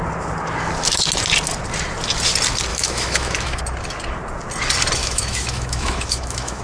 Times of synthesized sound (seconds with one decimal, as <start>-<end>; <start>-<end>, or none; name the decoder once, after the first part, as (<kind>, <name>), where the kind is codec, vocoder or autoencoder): 2.7-3.6 (autoencoder, DAC-VAE); 5.0-6.6